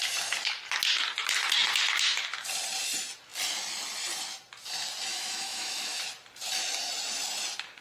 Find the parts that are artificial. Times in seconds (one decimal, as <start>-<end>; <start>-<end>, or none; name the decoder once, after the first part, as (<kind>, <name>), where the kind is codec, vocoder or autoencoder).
5.1-6.0 (autoencoder, DAC-VAE)